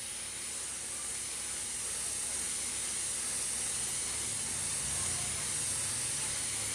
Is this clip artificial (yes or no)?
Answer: no